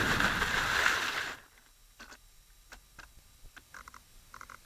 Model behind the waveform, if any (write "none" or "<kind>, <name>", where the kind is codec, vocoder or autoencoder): none